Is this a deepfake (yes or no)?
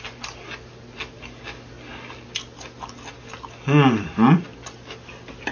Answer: no